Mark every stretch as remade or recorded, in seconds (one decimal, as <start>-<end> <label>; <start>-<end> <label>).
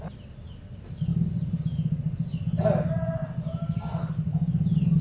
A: 0.0-5.0 recorded